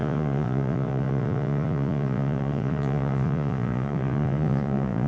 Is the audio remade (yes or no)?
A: yes